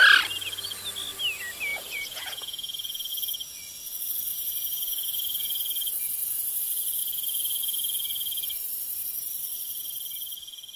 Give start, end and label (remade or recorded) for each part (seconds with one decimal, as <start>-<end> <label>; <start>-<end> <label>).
0.0-1.7 recorded; 1.7-3.1 remade; 3.1-4.3 recorded; 4.3-6.6 remade; 6.6-10.8 recorded